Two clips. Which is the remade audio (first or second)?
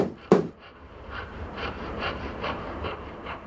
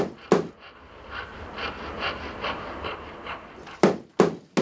first